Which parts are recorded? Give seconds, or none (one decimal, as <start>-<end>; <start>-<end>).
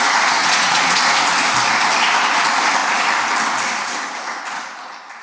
0.0-0.4; 1.0-5.2